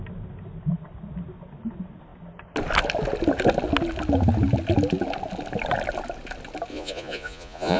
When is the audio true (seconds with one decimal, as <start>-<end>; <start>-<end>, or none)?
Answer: 0.0-6.7